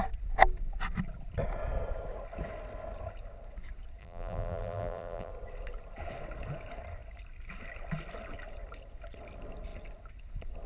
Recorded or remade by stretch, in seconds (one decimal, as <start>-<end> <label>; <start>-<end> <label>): 0.0-4.0 recorded; 4.0-5.3 remade; 5.3-10.7 recorded